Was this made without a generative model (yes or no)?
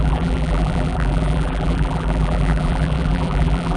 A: no